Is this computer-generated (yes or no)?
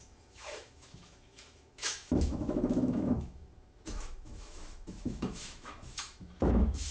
yes